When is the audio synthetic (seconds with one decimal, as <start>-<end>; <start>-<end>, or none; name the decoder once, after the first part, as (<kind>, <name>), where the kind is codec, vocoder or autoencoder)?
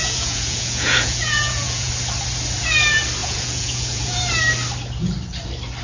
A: 0.0-1.9 (vocoder, Vocos); 3.2-4.2